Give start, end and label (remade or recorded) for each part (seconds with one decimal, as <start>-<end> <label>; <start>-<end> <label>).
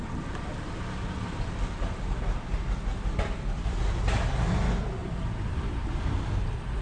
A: 0.0-6.8 recorded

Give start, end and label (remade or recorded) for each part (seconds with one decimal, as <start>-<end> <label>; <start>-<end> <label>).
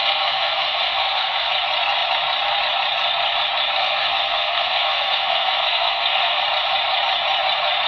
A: 0.0-1.5 remade; 1.5-3.8 recorded; 3.8-6.4 remade; 6.4-7.9 recorded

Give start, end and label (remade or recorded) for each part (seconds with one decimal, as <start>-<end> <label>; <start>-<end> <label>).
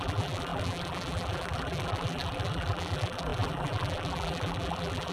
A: 0.0-5.1 remade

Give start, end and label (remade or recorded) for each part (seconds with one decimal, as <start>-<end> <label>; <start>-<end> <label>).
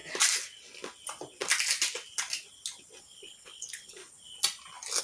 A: 0.0-3.0 recorded; 3.0-4.0 remade; 4.0-5.0 recorded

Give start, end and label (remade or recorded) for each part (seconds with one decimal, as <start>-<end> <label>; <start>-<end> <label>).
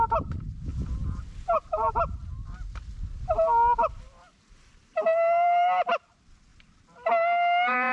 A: 0.0-4.3 recorded; 4.3-6.1 remade; 6.1-7.9 recorded